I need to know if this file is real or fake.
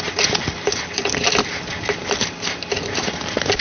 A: real